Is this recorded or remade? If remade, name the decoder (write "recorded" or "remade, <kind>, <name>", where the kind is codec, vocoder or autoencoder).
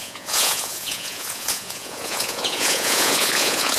remade, vocoder, Vocos